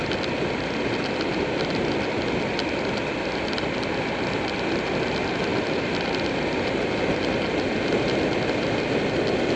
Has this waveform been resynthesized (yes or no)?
no